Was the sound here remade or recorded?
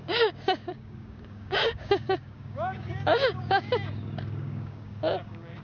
remade